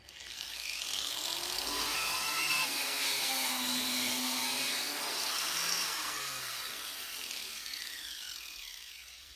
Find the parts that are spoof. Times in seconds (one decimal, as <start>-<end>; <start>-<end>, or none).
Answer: 0.0-9.4

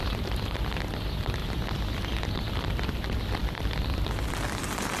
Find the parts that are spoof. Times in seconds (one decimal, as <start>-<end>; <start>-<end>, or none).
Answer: 3.4-4.6